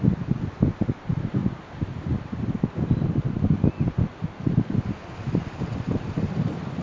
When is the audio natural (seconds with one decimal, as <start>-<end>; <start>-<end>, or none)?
0.0-6.8